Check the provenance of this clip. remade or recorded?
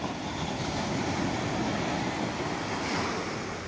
recorded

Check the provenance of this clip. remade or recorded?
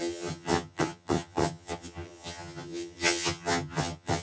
remade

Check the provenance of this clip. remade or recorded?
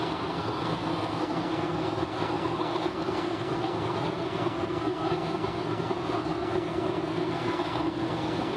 remade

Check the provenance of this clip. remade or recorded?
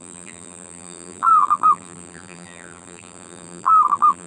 remade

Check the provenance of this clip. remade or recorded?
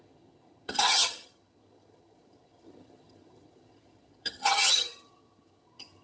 remade